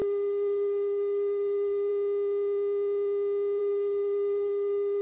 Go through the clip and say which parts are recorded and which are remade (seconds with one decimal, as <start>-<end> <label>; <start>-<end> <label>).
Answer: 0.0-1.9 remade; 1.9-3.6 recorded; 3.6-5.0 remade